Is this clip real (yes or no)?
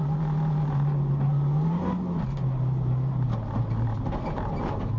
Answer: yes